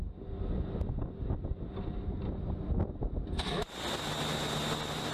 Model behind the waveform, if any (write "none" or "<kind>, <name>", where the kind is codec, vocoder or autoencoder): none